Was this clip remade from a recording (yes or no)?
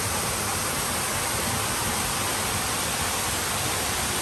no